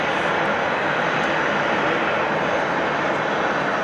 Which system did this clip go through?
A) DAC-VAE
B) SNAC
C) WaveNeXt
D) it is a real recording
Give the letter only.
D